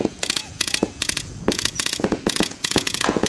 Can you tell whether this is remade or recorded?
remade